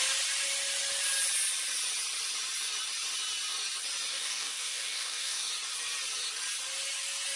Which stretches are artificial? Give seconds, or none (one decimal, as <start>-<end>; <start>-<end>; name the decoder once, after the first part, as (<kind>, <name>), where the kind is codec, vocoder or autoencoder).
4.1-5.5 (codec, DAC)